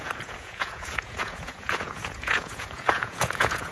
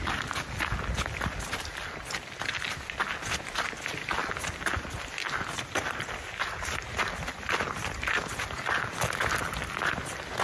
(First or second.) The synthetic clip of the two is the first